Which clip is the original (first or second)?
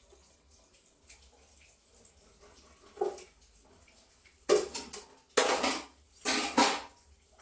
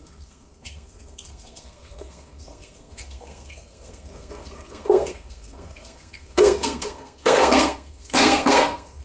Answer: first